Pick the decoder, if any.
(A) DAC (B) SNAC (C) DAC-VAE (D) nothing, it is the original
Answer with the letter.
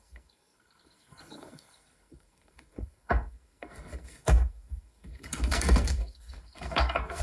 B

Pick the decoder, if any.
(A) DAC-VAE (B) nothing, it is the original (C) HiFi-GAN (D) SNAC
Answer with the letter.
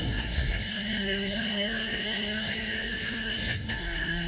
D